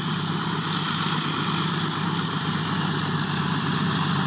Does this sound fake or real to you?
real